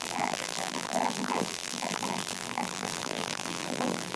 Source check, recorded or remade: remade